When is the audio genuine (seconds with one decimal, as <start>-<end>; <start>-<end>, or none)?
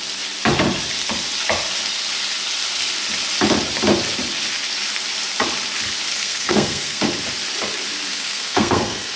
0.0-6.1; 7.0-8.1